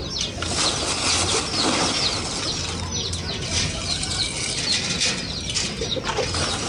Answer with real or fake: real